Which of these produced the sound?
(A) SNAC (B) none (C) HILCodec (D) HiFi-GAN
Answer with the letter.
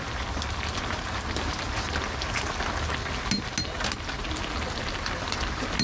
B